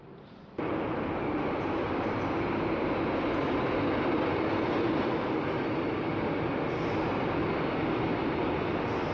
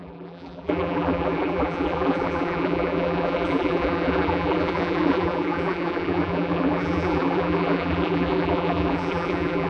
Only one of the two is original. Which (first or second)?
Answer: first